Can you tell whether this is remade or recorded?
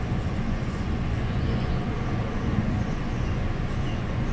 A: remade